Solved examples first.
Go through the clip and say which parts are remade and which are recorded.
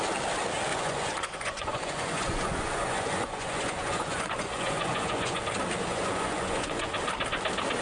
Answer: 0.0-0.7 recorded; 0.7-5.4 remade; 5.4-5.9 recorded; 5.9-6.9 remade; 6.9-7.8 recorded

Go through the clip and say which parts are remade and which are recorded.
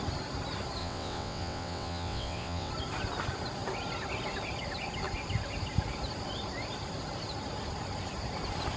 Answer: 0.0-0.8 recorded; 0.8-2.7 remade; 2.7-8.8 recorded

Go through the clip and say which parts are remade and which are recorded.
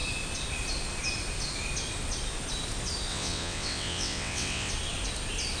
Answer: 0.0-3.1 recorded; 3.1-4.7 remade; 4.7-5.6 recorded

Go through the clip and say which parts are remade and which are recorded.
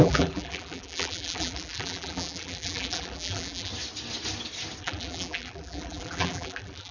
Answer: 0.0-3.7 remade; 3.7-4.8 recorded; 4.8-6.9 remade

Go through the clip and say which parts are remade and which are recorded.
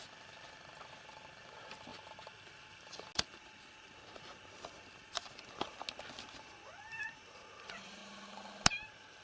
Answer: 0.0-1.9 remade; 1.9-7.0 recorded; 7.0-8.0 remade; 8.0-9.2 recorded